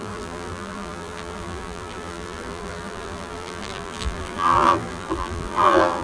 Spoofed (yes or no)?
yes